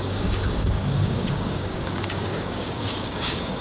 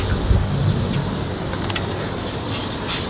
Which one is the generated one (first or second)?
first